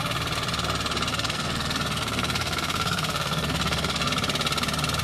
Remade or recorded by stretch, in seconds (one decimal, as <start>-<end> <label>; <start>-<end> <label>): 0.0-1.1 recorded; 1.1-4.1 remade; 4.1-5.0 recorded